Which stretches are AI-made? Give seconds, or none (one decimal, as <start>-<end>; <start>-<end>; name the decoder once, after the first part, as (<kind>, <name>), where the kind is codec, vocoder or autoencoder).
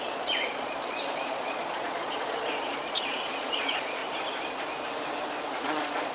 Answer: 0.0-4.0 (vocoder, Vocos); 5.6-6.1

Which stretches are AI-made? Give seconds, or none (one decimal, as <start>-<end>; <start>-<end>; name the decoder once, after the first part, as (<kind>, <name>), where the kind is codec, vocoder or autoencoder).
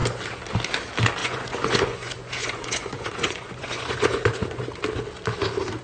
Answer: 1.2-4.6 (vocoder, Vocos)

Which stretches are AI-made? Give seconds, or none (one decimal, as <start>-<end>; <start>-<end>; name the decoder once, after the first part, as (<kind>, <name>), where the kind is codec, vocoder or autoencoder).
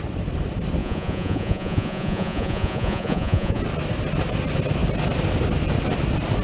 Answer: 0.8-3.6 (vocoder, Vocos)